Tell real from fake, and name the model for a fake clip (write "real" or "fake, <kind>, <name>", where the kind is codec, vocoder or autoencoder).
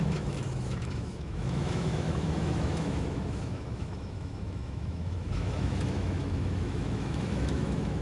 fake, autoencoder, DAC-VAE